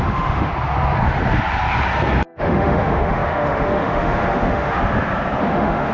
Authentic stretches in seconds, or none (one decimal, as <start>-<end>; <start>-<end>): 0.5-2.4; 4.8-5.4